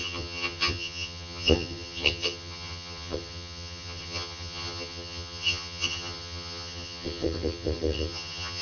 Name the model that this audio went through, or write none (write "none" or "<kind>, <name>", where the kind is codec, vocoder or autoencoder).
vocoder, HiFi-GAN